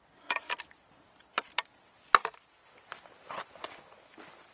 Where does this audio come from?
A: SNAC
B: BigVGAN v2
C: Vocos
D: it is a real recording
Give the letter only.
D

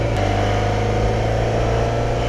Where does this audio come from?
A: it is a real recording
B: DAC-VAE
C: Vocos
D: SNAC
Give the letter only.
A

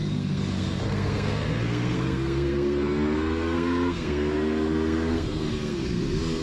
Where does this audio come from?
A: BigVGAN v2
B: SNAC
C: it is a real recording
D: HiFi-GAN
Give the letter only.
B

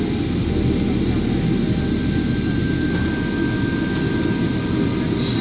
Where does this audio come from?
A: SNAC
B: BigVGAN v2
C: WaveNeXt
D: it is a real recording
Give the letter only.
D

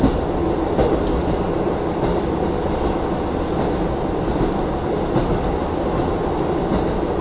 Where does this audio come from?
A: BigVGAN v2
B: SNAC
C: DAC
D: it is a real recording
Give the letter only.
D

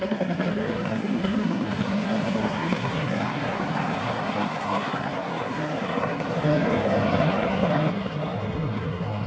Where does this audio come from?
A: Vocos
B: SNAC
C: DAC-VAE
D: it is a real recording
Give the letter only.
B